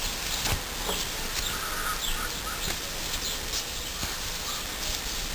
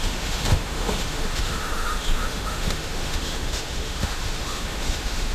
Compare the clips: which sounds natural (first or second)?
first